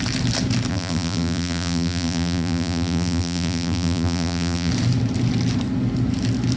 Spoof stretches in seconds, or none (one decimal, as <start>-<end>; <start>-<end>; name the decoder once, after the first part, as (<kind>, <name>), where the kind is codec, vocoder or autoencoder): 0.7-4.7 (vocoder, BigVGAN v2)